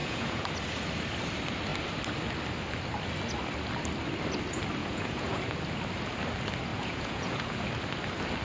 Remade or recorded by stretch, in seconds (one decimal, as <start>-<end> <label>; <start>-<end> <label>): 0.0-0.5 remade; 0.5-4.8 recorded; 4.8-5.4 remade; 5.4-6.7 recorded; 6.7-7.7 remade; 7.7-8.4 recorded